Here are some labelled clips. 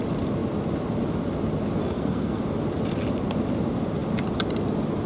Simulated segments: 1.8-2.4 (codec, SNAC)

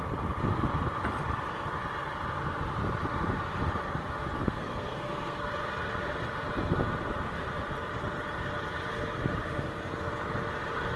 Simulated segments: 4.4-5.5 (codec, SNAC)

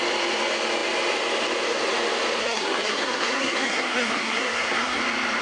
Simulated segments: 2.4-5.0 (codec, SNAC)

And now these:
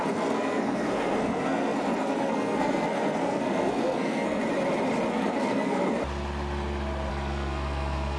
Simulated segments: 0.0-4.4 (codec, SNAC); 5.1-6.0; 7.1-8.2

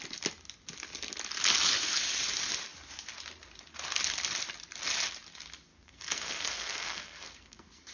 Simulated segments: 5.7-7.9 (codec, SNAC)

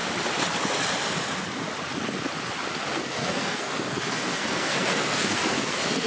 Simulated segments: 2.9-6.1 (codec, SNAC)

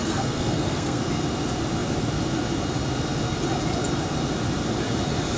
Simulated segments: 0.0-1.0 (codec, SNAC)